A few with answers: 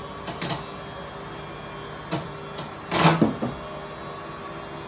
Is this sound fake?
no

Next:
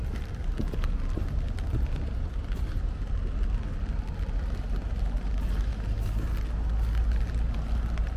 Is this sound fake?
no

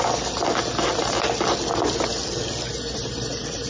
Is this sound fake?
no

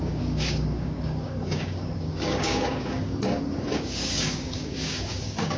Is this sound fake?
yes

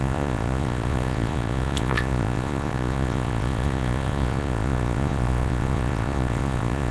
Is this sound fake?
yes